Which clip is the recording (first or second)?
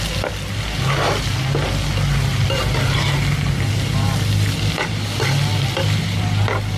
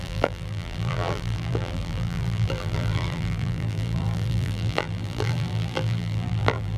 first